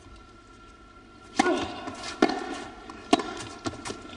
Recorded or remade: recorded